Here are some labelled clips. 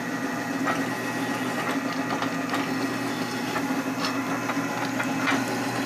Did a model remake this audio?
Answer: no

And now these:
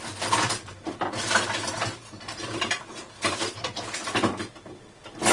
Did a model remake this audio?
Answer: no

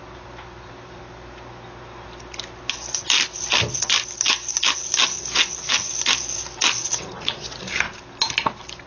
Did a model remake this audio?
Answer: no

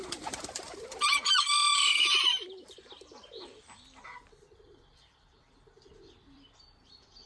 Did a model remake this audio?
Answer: yes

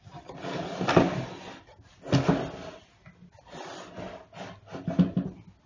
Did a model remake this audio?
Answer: no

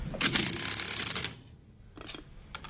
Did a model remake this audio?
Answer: no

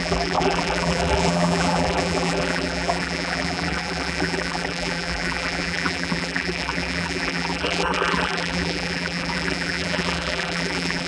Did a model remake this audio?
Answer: yes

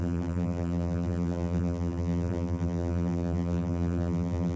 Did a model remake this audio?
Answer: yes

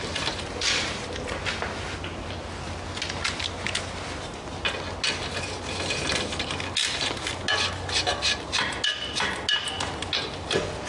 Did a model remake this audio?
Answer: no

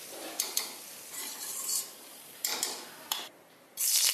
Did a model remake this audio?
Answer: yes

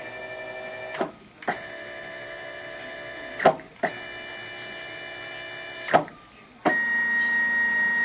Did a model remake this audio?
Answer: no